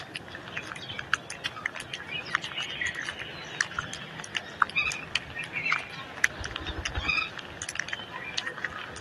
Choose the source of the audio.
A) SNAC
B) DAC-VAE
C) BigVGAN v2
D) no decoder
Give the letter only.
D